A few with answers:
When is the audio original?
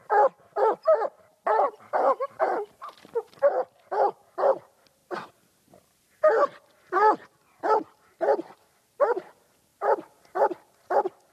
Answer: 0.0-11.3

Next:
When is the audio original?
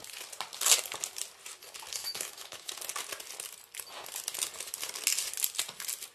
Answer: 0.0-2.0; 2.7-6.1